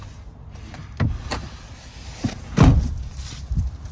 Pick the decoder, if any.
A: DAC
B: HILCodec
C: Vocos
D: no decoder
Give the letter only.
D